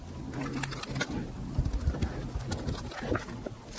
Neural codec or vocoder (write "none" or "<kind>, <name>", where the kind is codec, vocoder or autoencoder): none